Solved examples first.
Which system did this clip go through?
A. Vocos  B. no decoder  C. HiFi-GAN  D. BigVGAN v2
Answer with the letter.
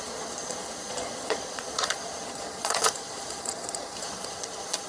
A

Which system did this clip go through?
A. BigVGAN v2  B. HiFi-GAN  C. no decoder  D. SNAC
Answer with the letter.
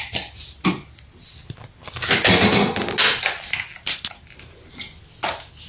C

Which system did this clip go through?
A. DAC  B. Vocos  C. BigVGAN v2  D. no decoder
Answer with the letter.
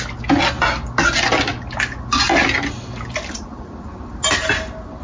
D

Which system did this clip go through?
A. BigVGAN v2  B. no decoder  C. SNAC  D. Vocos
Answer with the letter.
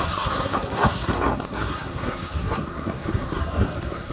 C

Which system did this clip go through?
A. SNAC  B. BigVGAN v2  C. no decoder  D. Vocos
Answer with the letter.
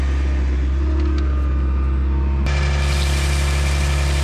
C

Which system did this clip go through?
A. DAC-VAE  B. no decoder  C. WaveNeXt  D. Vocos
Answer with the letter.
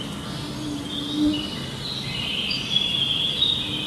B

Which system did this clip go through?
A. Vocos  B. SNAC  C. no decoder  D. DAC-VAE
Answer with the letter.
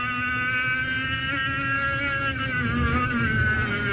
C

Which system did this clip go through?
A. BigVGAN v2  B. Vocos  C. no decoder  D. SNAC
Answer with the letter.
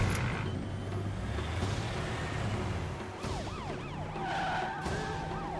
C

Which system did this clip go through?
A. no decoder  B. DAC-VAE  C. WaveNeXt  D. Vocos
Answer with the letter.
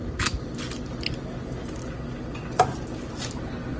A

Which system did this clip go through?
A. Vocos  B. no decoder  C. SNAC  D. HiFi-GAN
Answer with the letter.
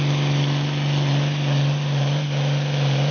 B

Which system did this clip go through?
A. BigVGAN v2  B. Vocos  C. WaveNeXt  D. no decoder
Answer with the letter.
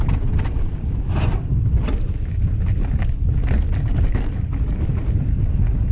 D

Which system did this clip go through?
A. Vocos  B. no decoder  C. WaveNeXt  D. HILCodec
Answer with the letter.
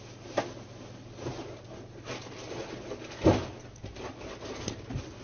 B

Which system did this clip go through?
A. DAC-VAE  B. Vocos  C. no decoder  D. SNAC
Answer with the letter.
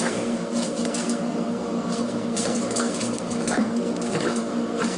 D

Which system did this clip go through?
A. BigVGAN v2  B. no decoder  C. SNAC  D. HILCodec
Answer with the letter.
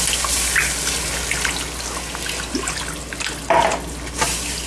B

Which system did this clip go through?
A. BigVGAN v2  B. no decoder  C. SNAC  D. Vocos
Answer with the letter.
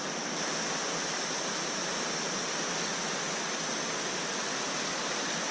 B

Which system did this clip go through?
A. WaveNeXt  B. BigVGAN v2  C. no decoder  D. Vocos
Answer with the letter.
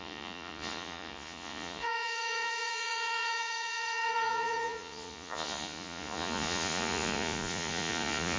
D